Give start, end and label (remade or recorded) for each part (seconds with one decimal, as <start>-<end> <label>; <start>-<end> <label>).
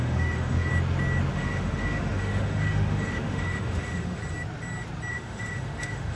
0.0-0.7 remade; 0.7-1.3 recorded; 1.3-4.2 remade; 4.2-5.1 recorded; 5.1-6.2 remade